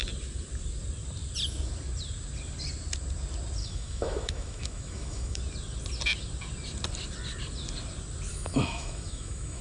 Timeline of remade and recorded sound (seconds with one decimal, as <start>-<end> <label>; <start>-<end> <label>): 0.0-3.6 recorded; 3.6-5.4 remade; 5.4-8.3 recorded; 8.3-9.6 remade